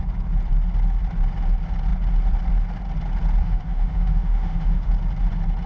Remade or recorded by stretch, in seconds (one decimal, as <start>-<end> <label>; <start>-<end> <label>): 0.0-3.4 recorded; 3.4-4.9 remade; 4.9-5.7 recorded